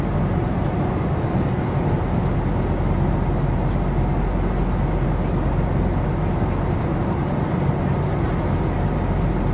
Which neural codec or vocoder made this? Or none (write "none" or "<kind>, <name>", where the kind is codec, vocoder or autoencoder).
none